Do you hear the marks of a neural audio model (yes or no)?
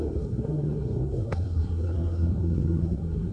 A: yes